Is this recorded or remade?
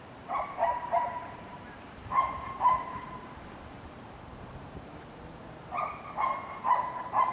remade